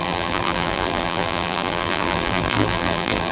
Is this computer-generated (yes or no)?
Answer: yes